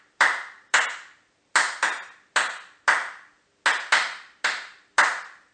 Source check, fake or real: real